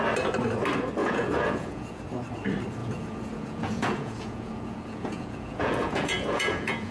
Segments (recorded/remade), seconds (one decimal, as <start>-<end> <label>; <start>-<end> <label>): 0.0-1.0 recorded; 1.0-2.0 remade; 2.0-2.8 recorded; 2.8-6.9 remade